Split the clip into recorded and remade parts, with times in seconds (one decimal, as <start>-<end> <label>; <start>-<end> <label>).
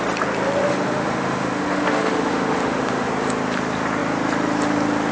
0.0-0.6 recorded; 0.6-3.1 remade; 3.1-5.1 recorded